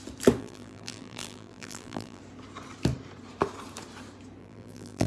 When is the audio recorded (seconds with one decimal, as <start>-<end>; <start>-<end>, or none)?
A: 0.0-0.4; 2.2-4.4